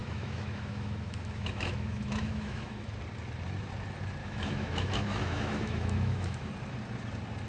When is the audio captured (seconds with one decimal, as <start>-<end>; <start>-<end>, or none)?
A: 2.9-4.2; 6.5-7.5